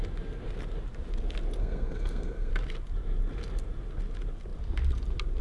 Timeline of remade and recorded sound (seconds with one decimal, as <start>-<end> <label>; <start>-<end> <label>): 0.0-1.6 recorded; 1.6-2.5 remade; 2.5-5.4 recorded